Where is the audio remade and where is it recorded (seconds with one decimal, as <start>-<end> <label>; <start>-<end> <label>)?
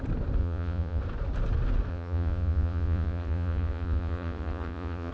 0.0-0.4 recorded; 0.4-1.0 remade; 1.0-1.9 recorded; 1.9-5.1 remade